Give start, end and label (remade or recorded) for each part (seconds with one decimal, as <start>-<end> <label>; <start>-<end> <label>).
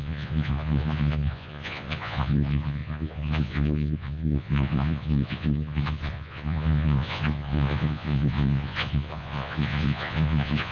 0.0-10.7 remade